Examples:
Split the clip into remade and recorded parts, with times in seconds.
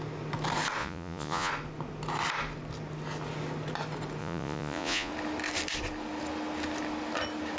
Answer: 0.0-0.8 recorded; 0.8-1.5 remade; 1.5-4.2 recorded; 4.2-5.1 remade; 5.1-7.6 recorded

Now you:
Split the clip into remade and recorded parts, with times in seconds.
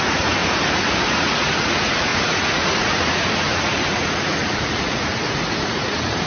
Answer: 0.0-0.4 remade; 0.4-1.0 recorded; 1.0-6.3 remade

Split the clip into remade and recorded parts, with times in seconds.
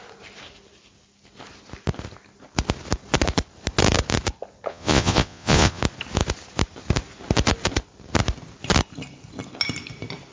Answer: 0.0-4.7 recorded; 4.7-5.8 remade; 5.8-10.3 recorded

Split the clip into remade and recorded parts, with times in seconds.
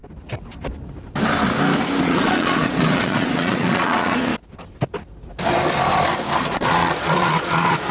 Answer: 0.0-2.0 recorded; 2.0-4.3 remade; 4.3-6.4 recorded; 6.4-7.9 remade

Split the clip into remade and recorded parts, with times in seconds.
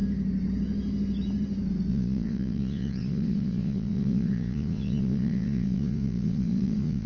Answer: 0.0-1.9 recorded; 1.9-7.1 remade